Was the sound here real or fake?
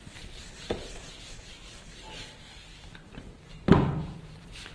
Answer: real